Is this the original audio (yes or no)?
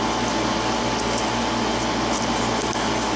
yes